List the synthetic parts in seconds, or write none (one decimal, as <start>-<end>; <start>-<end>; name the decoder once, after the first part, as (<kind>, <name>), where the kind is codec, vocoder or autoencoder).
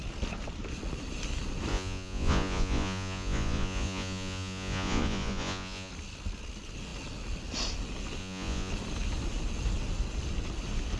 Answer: 1.7-5.9 (vocoder, Vocos); 8.2-8.7